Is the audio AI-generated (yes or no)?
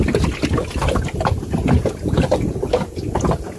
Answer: no